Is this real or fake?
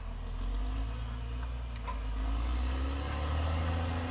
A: real